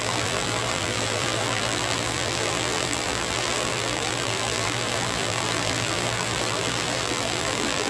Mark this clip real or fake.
fake